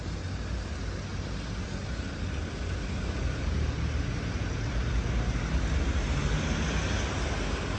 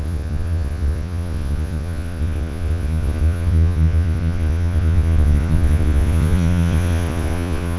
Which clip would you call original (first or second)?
first